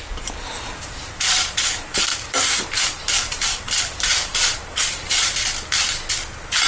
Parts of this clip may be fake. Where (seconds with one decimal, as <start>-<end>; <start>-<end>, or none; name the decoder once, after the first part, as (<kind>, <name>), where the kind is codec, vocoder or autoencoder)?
0.0-2.1 (vocoder, BigVGAN v2); 2.6-5.4